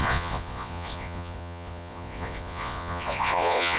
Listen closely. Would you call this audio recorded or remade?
remade